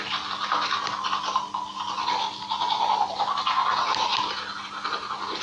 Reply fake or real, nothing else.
real